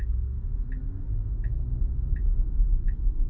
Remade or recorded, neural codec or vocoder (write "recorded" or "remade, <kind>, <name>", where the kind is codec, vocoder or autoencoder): recorded